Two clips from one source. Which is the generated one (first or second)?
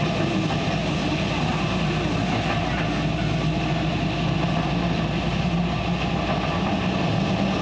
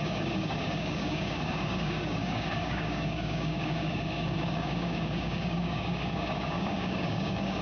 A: second